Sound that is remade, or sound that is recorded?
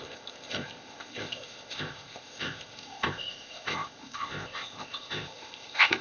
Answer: remade